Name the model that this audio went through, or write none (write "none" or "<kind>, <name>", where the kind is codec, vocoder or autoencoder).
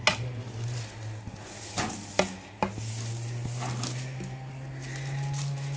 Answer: none